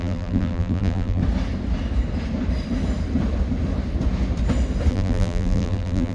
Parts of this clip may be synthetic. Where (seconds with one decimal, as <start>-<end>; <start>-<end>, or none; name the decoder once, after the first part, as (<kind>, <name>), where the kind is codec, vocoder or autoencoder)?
0.0-1.2 (vocoder, BigVGAN v2); 4.9-6.1